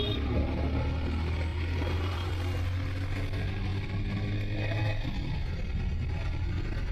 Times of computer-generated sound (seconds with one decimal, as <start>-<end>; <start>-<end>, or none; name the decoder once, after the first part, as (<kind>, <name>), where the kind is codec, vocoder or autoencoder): 1.5-2.3 (vocoder, BigVGAN v2)